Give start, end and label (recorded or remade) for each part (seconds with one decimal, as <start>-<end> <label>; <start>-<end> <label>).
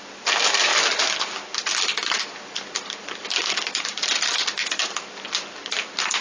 0.0-6.2 recorded